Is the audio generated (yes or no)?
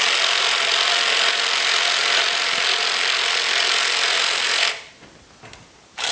no